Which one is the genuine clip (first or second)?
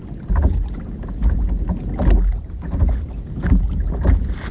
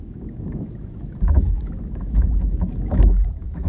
first